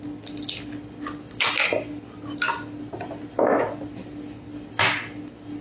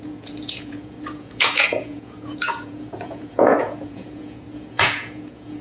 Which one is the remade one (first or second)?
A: second